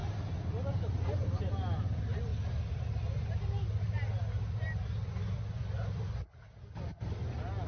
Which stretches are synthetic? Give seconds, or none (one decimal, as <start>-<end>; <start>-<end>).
none